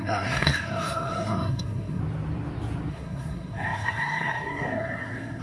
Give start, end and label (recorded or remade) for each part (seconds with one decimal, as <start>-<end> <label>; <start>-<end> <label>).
0.0-2.0 remade; 2.0-2.9 recorded; 2.9-5.4 remade